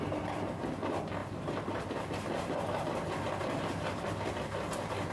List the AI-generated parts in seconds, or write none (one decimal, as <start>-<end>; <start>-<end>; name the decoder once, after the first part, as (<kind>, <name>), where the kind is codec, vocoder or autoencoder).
none